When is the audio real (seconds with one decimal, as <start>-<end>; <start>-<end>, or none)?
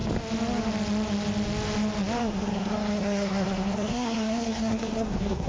0.0-2.2